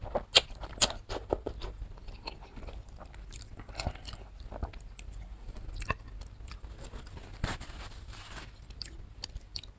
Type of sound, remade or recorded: recorded